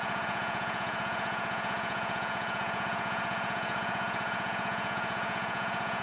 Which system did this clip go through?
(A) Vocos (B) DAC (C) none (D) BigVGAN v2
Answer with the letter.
A